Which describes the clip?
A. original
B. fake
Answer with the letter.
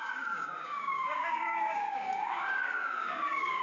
B